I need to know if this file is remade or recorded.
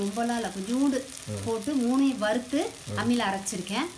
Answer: recorded